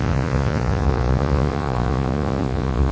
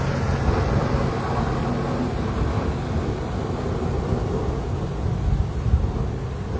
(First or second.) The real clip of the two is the second